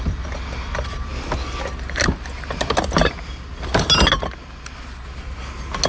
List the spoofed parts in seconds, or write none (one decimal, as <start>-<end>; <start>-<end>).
none